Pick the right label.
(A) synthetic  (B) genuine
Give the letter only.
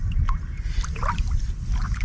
B